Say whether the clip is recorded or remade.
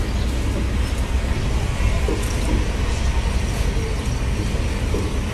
recorded